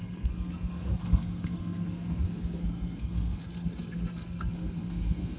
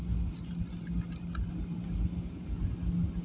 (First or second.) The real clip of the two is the second